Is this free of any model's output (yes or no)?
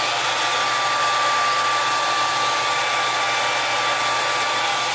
yes